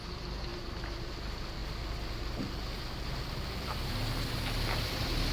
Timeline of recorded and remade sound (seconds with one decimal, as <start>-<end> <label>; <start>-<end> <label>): 0.0-5.3 recorded